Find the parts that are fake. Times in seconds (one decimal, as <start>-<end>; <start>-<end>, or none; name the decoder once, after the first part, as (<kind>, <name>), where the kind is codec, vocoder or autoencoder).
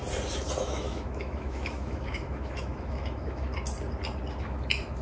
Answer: 0.6-3.5 (autoencoder, DAC-VAE); 4.4-5.0